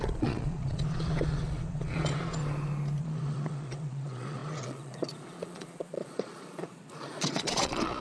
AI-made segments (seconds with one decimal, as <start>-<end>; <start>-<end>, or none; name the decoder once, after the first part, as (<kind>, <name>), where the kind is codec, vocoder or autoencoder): 0.0-2.4 (vocoder, Vocos); 3.0-8.0

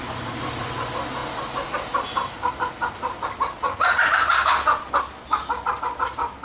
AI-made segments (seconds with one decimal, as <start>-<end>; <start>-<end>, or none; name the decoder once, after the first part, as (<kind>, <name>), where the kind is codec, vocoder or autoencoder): none

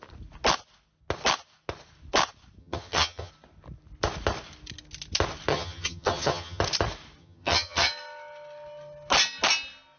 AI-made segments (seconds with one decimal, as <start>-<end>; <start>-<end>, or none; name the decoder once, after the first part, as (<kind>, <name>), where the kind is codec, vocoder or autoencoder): 2.6-3.3 (vocoder, HiFi-GAN); 5.5-6.6; 7.2-7.9

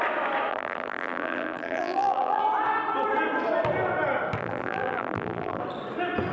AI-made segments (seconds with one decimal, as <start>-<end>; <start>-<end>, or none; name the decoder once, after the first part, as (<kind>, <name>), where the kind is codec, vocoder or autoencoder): 0.5-2.4 (vocoder, BigVGAN v2); 4.4-5.6

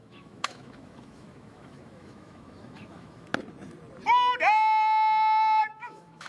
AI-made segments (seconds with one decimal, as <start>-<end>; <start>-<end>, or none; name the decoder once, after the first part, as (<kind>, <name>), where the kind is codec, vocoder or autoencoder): 0.0-3.3 (autoencoder, DAC-VAE); 5.6-6.3